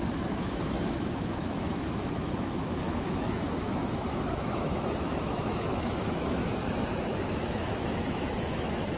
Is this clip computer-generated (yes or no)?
yes